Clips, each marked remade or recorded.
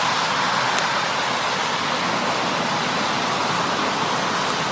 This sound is recorded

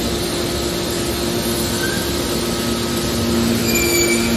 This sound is recorded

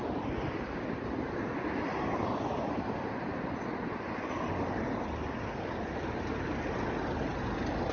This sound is recorded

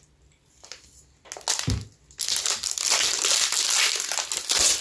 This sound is recorded